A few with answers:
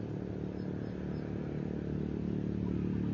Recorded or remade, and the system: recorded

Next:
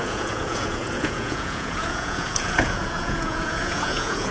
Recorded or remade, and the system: remade, vocoder, Vocos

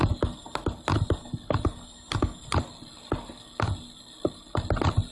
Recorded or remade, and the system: recorded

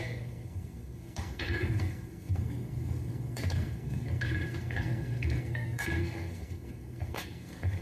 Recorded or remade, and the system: remade, codec, SNAC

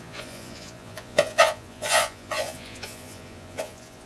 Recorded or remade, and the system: remade, vocoder, Vocos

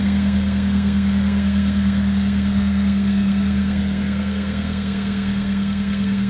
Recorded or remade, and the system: remade, codec, SNAC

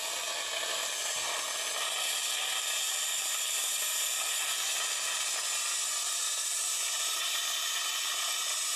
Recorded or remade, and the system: recorded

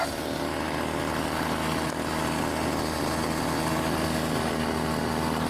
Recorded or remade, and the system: recorded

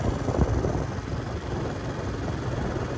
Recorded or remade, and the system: recorded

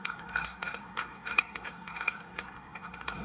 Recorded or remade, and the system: remade, codec, SNAC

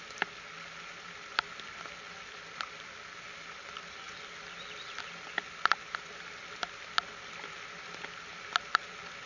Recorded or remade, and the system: recorded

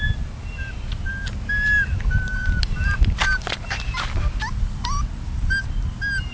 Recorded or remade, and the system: recorded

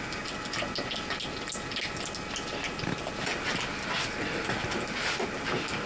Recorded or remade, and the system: recorded